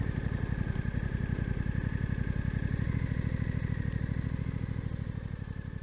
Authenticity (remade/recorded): recorded